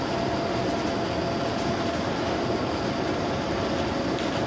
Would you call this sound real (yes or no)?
yes